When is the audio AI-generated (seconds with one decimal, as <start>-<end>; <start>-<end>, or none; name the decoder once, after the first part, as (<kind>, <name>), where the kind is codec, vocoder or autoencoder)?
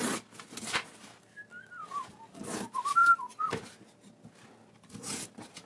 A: none